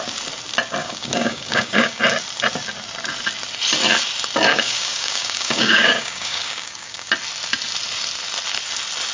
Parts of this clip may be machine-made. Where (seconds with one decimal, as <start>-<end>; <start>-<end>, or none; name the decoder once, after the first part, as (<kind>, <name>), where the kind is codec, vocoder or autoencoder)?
0.8-2.0 (codec, DAC); 4.5-7.1